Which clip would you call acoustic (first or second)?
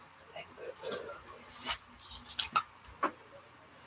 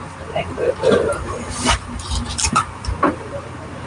first